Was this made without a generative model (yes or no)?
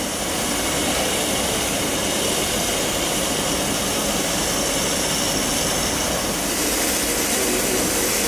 yes